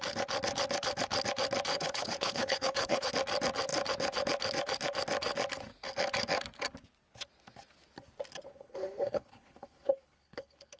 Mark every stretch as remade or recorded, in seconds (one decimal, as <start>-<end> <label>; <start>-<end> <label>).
0.0-1.7 recorded; 1.7-3.1 remade; 3.1-8.5 recorded; 8.5-10.8 remade